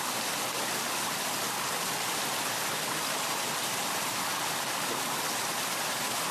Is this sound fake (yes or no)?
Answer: no